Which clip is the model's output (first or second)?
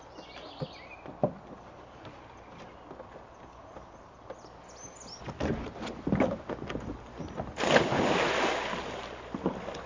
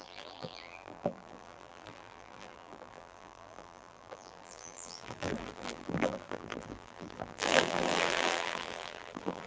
second